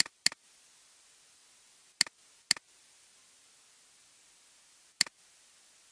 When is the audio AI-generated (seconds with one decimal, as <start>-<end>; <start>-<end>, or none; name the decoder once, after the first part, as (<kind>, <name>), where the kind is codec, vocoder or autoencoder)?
none